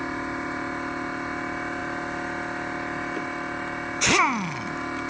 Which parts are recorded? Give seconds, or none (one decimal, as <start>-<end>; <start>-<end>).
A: 0.0-5.1